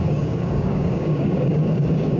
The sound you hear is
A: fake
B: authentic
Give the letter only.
A